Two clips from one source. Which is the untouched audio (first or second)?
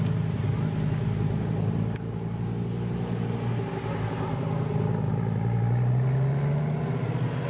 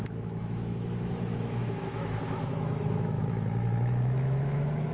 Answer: first